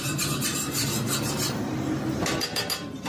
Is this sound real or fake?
real